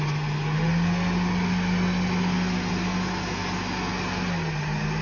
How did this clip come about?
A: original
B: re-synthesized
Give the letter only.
A